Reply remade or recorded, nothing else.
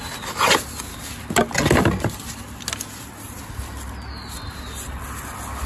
recorded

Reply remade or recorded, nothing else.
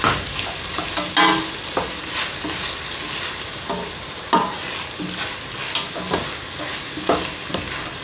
recorded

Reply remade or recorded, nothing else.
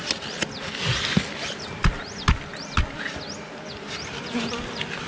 recorded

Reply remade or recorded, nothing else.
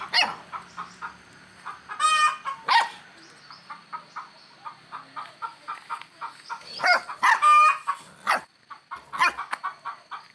recorded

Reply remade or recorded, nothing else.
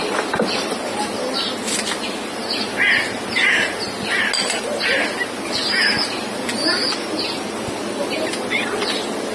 recorded